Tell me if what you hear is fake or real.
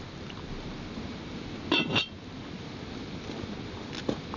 real